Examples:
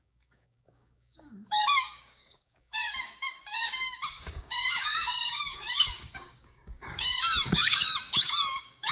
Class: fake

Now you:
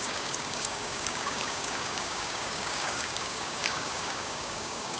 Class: fake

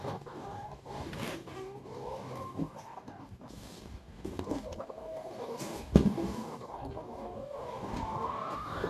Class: fake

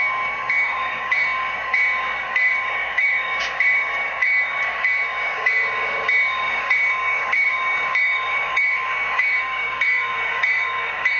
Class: fake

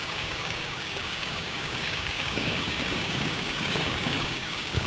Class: fake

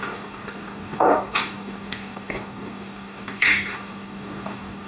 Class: fake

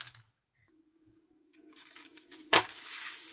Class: fake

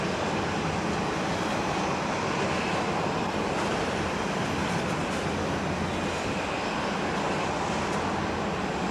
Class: real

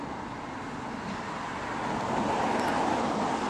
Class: real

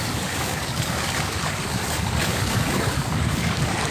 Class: fake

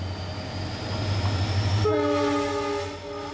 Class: real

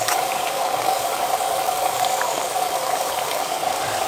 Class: fake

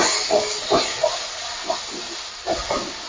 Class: real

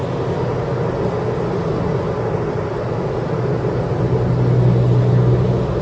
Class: real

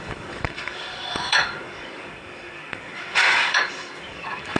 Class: fake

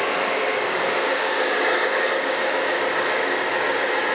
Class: fake